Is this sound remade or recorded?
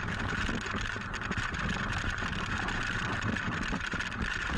recorded